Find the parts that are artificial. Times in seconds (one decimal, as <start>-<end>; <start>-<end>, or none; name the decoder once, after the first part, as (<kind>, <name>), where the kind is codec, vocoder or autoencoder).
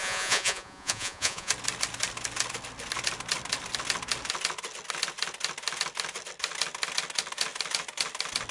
0.0-1.5 (vocoder, Vocos)